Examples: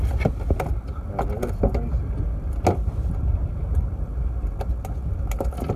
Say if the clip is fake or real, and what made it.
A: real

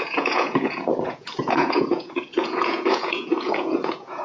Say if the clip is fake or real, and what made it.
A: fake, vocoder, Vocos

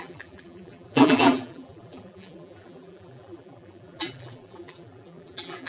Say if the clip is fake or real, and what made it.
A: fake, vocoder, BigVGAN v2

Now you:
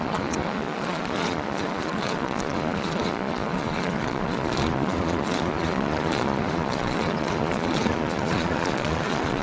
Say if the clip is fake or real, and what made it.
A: fake, vocoder, Vocos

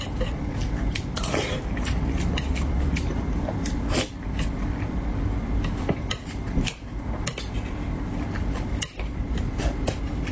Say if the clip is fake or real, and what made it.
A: real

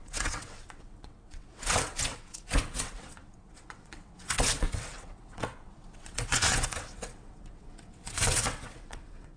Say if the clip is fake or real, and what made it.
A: fake, vocoder, WaveNeXt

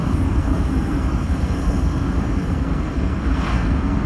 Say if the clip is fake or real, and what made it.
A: fake, codec, SNAC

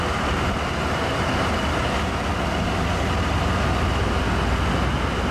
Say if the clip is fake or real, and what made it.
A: real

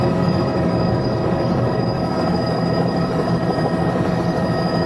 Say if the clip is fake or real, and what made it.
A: fake, codec, DAC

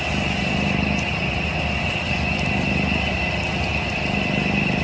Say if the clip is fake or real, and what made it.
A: real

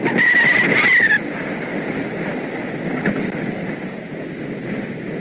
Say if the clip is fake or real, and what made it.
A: real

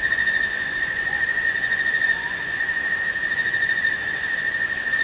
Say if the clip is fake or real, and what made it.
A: fake, vocoder, Vocos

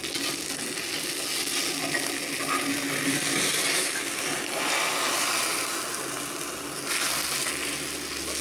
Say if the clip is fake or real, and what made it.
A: real